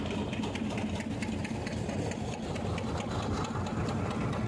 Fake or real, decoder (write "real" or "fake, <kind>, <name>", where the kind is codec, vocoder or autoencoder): real